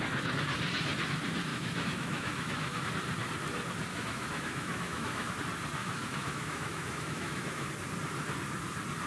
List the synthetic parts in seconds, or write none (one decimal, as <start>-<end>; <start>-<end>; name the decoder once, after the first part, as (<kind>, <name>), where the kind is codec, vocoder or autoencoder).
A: 1.5-2.9 (autoencoder, DAC-VAE); 3.9-5.3; 5.8-7.7